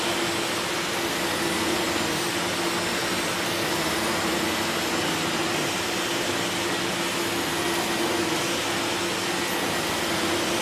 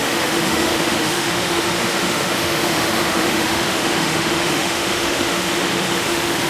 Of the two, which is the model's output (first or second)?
second